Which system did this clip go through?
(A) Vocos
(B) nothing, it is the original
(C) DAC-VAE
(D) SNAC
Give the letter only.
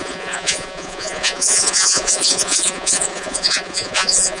A